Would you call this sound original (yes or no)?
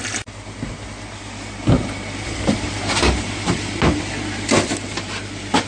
yes